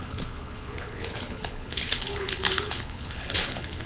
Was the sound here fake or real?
fake